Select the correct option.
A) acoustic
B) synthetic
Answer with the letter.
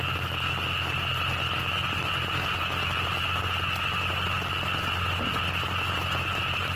A